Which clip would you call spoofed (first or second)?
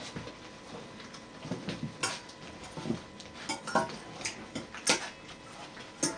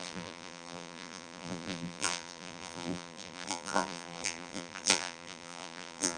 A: second